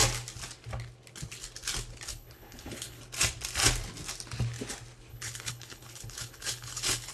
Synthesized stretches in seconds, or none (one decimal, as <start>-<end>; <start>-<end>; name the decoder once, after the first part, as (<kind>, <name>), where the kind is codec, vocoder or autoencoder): 2.1-3.0 (codec, HILCodec); 5.1-7.1